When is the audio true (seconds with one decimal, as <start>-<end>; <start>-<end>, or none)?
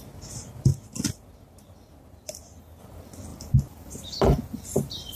0.0-5.2